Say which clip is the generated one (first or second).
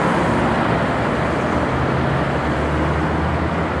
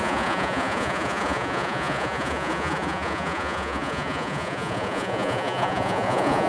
second